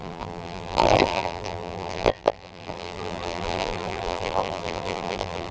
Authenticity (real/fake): fake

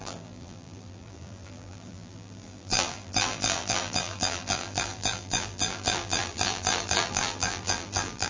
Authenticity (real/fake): fake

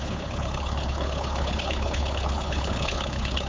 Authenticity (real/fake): fake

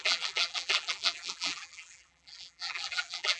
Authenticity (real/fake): fake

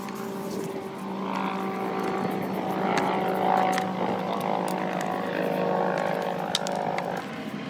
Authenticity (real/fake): real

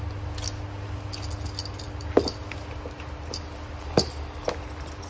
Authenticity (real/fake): real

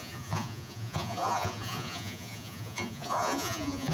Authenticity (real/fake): fake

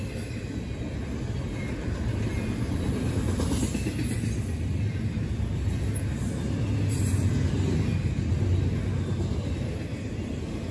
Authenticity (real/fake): real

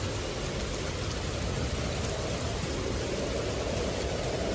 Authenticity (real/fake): real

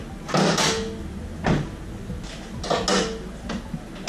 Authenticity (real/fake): real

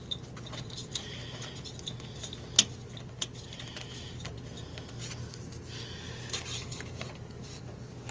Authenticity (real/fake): real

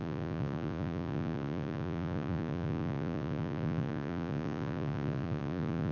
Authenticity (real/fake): fake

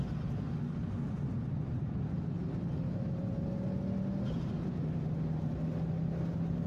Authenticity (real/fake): real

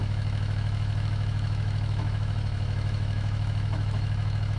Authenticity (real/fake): fake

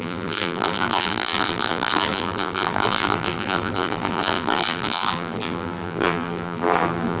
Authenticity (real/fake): fake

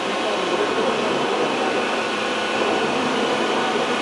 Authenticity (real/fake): fake